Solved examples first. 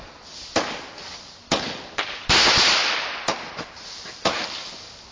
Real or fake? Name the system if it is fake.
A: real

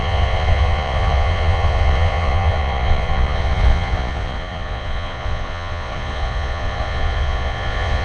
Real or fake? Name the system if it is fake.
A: fake, vocoder, Vocos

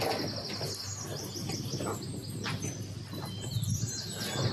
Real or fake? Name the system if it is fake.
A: real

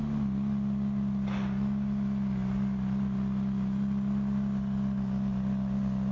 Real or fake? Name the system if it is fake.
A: real